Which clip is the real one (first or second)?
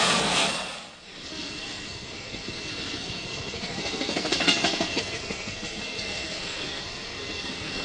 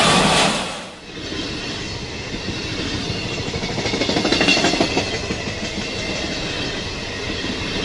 second